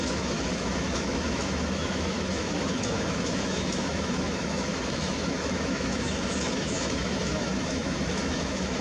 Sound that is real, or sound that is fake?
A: fake